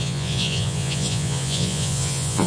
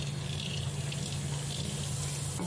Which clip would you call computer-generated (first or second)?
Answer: first